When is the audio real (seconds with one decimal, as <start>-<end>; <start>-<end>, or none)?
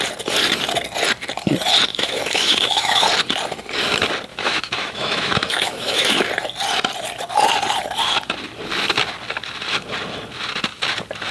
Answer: 0.0-1.9; 3.0-4.3; 6.3-11.3